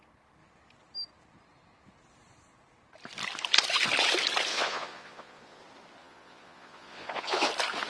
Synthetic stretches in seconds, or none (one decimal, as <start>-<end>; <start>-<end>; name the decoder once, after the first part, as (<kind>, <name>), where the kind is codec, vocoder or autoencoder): 4.5-5.6 (vocoder, Vocos); 6.0-7.5